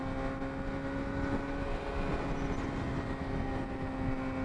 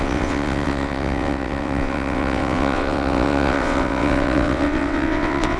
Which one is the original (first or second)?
first